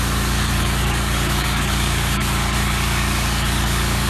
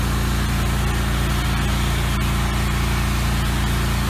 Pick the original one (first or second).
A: second